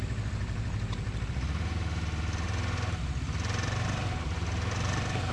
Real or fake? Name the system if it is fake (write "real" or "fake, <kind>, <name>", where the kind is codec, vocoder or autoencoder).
real